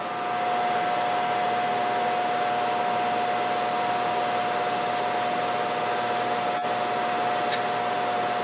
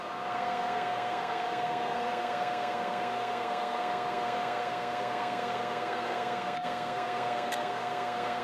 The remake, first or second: second